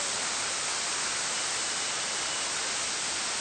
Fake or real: real